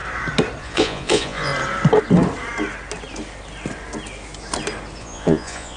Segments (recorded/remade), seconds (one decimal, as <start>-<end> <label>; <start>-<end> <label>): 0.0-0.6 recorded; 0.6-1.5 remade; 1.5-5.0 recorded; 5.0-5.8 remade